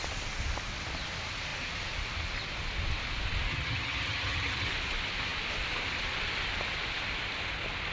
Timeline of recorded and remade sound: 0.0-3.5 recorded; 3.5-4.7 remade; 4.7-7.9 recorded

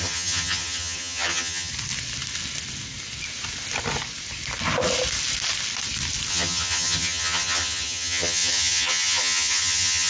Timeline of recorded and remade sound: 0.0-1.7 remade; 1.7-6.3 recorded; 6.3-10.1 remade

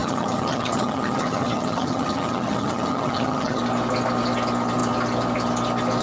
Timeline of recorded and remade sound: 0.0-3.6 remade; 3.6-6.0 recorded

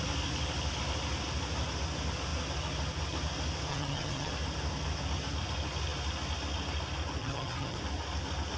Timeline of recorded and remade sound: 0.0-3.7 recorded; 3.7-4.3 remade; 4.3-7.2 recorded; 7.2-7.8 remade; 7.8-8.6 recorded

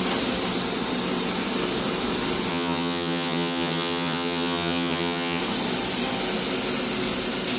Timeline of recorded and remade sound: 0.0-2.5 recorded; 2.5-5.4 remade; 5.4-7.6 recorded

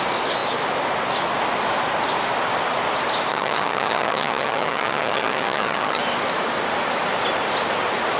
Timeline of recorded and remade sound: 0.0-3.3 recorded; 3.3-6.0 remade; 6.0-8.2 recorded

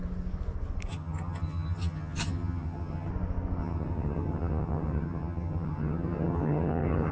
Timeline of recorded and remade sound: 0.0-0.9 recorded; 0.9-3.1 remade; 3.1-3.6 recorded; 3.6-7.1 remade